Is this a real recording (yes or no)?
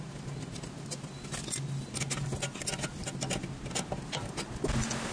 yes